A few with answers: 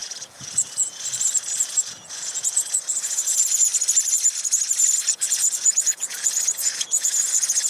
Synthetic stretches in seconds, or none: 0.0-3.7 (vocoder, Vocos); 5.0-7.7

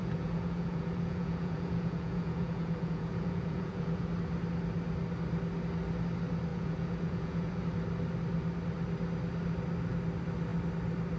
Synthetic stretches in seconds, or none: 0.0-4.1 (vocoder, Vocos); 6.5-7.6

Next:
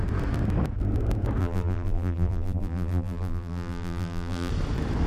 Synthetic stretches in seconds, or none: 1.4-4.5 (vocoder, BigVGAN v2)

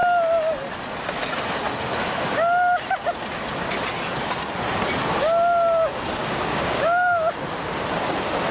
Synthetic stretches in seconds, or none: 6.2-7.3 (codec, DAC)

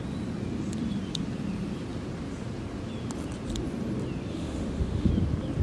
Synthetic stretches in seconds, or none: 4.3-5.1 (autoencoder, DAC-VAE)

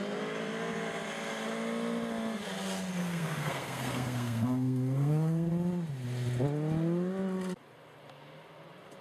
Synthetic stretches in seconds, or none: 3.0-5.5 (codec, SNAC)

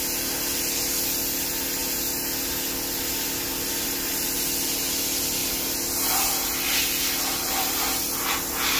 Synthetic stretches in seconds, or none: none